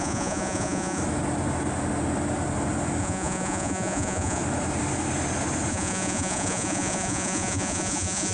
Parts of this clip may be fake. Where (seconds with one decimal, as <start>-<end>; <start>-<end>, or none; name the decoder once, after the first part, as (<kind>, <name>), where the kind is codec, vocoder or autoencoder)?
0.0-1.0 (vocoder, Vocos); 3.0-4.4; 5.7-8.3